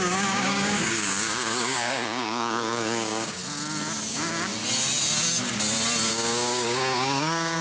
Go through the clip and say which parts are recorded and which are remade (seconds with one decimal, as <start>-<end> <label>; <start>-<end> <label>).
0.0-3.4 remade; 3.4-4.1 recorded; 4.1-4.5 remade; 4.5-6.1 recorded; 6.1-7.6 remade